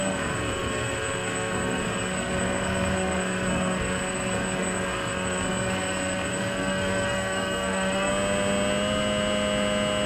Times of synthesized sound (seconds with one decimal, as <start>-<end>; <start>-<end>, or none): 0.0-8.1

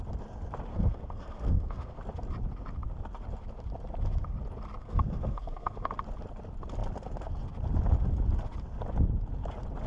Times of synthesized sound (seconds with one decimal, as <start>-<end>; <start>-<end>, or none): 0.7-2.0; 4.8-5.9